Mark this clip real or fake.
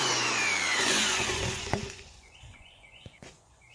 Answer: fake